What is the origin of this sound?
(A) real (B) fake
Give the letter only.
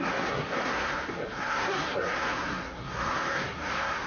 B